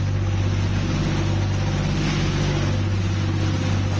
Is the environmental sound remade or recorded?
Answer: recorded